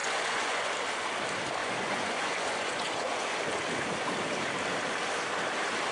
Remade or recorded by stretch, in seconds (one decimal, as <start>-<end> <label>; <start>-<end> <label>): 0.0-0.7 remade; 0.7-1.6 recorded; 1.6-3.4 remade; 3.4-5.9 recorded